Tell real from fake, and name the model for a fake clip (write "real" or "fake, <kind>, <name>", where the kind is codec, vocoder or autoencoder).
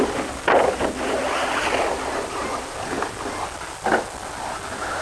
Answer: real